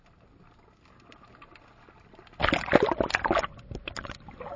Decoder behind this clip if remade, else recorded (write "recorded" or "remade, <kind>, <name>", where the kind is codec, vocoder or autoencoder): recorded